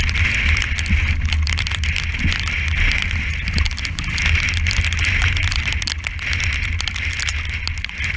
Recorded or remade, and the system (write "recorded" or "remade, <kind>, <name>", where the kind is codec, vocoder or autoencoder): recorded